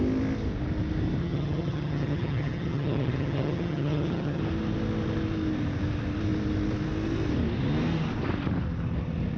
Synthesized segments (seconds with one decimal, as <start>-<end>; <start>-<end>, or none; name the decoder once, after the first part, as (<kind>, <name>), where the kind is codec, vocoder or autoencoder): 1.2-4.4 (vocoder, HiFi-GAN)